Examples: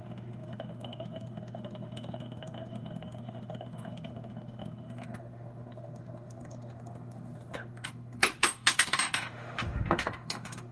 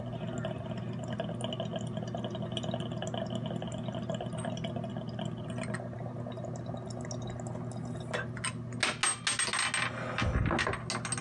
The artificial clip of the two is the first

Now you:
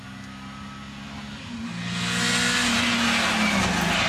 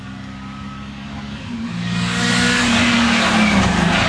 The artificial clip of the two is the second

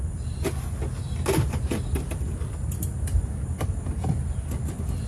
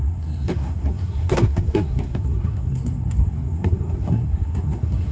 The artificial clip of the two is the second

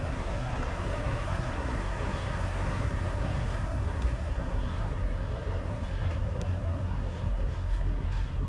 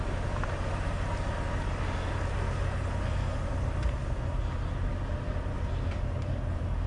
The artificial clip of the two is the first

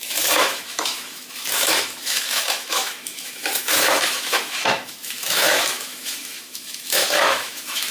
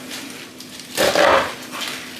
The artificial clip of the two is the first